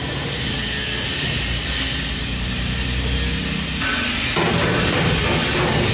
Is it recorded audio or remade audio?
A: recorded